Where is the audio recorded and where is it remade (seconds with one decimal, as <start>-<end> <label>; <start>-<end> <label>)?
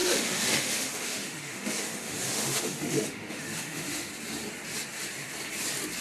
0.0-4.1 remade; 4.1-6.0 recorded